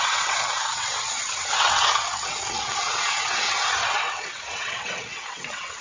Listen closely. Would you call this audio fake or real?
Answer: fake